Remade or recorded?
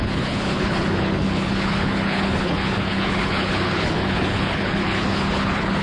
remade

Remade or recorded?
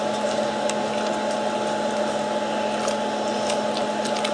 recorded